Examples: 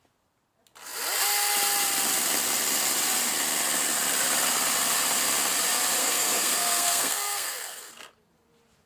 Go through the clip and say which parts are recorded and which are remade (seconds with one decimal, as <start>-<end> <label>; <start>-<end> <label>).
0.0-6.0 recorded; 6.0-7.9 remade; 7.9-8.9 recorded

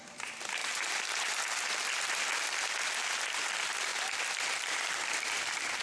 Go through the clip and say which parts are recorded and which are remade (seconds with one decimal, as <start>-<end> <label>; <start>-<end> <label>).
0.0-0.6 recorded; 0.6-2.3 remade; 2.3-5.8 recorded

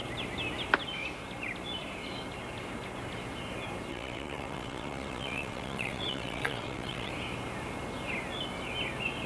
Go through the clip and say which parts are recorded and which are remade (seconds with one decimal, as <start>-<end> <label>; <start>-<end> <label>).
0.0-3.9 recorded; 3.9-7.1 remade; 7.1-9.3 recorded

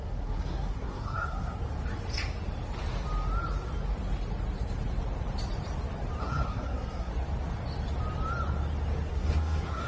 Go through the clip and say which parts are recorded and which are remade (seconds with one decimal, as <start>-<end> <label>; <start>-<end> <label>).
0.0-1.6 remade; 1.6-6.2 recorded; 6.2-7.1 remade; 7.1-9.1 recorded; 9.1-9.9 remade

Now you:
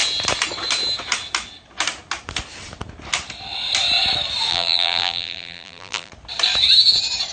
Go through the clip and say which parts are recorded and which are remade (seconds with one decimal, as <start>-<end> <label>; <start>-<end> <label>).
0.0-4.5 recorded; 4.5-6.1 remade; 6.1-7.3 recorded